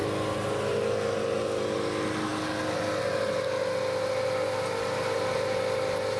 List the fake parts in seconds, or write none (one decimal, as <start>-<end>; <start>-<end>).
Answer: none